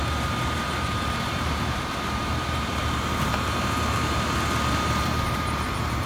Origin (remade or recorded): remade